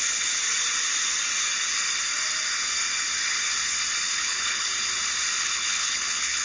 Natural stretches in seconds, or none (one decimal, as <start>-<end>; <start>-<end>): 0.4-4.2; 4.7-5.4